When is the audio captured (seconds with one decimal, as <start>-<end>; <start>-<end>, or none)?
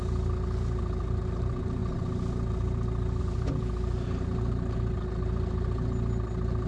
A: 0.0-6.7